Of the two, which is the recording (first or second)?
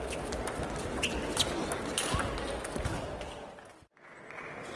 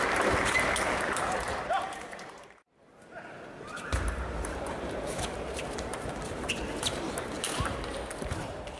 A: first